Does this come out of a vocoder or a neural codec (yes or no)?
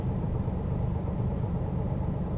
yes